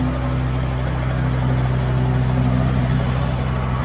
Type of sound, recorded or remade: recorded